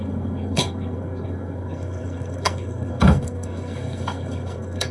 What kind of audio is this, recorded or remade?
remade